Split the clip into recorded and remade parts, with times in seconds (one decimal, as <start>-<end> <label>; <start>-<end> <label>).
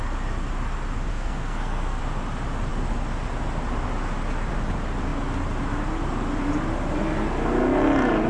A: 0.0-1.1 recorded; 1.1-2.0 remade; 2.0-8.3 recorded